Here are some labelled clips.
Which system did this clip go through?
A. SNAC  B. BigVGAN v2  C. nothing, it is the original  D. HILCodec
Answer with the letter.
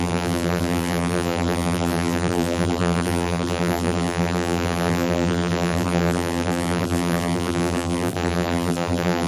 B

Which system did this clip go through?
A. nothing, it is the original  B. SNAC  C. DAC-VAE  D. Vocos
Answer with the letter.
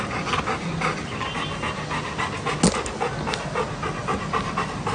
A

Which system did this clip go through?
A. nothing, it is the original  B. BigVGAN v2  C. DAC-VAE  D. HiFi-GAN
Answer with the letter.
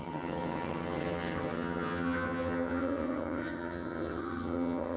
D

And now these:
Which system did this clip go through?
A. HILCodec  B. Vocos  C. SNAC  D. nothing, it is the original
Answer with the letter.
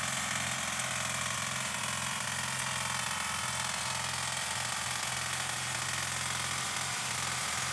D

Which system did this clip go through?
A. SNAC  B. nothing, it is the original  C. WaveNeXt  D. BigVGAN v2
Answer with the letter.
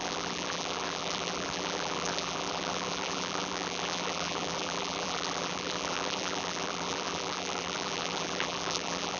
D